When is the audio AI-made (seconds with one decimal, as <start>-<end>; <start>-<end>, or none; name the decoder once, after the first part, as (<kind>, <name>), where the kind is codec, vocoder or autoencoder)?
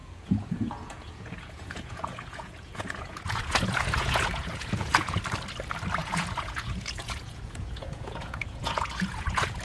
0.0-5.2 (vocoder, Vocos); 6.0-9.6